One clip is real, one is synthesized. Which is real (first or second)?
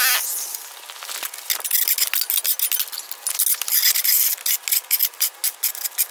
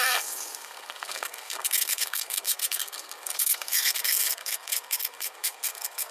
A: first